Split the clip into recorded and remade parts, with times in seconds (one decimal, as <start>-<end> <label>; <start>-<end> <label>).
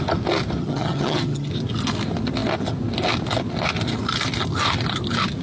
0.0-0.6 recorded; 0.6-1.5 remade; 1.5-5.4 recorded